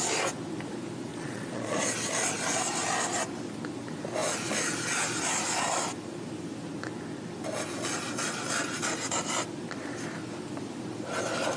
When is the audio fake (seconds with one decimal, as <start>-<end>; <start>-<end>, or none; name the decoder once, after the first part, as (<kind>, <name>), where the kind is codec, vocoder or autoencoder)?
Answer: 1.1-1.8 (vocoder, Vocos)